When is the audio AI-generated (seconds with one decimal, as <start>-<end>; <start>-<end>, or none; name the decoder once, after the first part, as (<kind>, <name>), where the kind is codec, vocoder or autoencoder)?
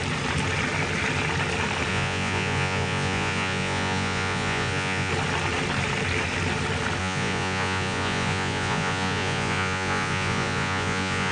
1.9-5.1 (vocoder, Vocos); 7.0-11.3